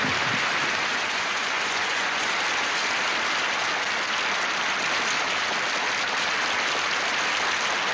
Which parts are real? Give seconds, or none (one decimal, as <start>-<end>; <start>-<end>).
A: 0.0-0.9; 2.3-7.9